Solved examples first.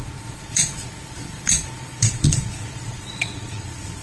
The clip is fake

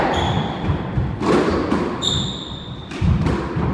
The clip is fake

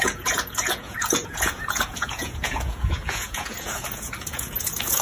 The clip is fake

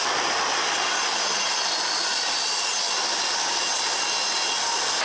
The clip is real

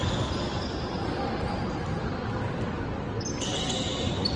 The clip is real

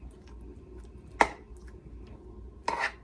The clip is real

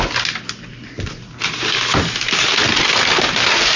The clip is real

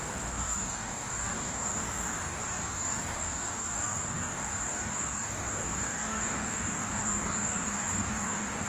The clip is fake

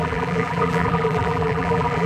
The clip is fake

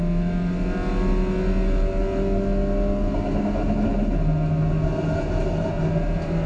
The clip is real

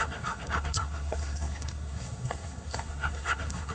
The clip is fake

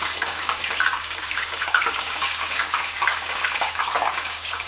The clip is fake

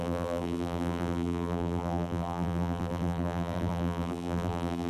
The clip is fake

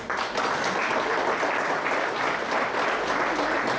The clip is real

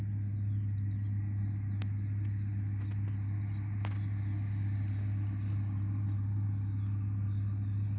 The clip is real